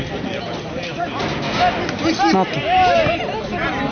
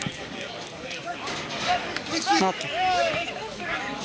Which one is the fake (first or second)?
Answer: second